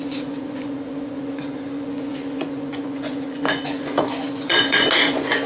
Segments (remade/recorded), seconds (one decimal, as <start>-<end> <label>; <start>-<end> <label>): 0.0-5.5 remade